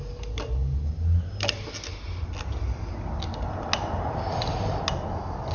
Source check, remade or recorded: recorded